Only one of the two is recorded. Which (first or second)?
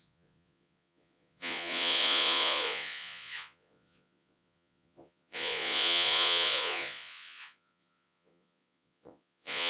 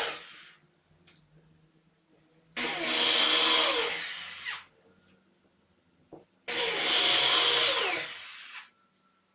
second